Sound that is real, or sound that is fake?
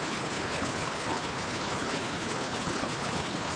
fake